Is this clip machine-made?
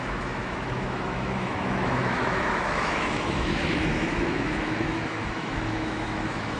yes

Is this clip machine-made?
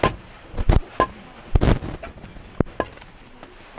no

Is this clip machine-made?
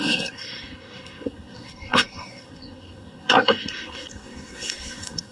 yes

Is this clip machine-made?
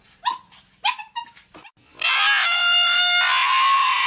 no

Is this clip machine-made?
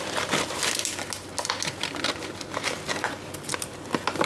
no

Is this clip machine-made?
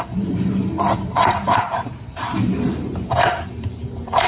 yes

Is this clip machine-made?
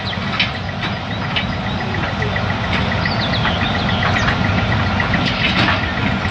no